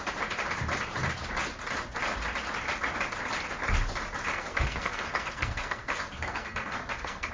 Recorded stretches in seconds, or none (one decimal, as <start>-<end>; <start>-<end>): 0.0-4.3

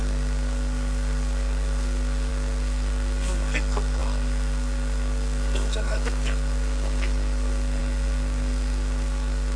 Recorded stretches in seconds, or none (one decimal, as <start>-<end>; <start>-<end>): none

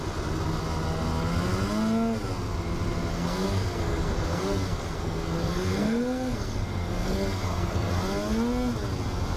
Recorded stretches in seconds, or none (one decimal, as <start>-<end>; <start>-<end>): 0.0-3.1; 7.9-9.4

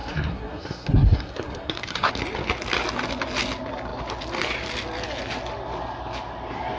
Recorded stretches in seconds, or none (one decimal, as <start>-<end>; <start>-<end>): 2.1-6.8

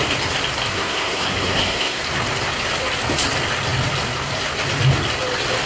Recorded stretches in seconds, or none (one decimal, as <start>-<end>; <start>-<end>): 0.0-0.7; 2.0-5.7